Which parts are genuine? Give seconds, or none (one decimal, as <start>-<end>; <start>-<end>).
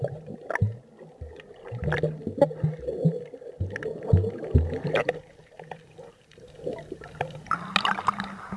0.0-5.2; 7.7-8.6